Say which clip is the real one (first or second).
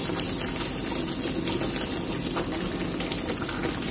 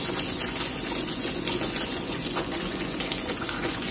first